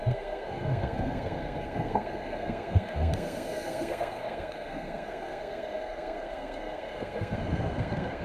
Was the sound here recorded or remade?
remade